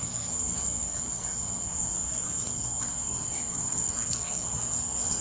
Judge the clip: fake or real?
fake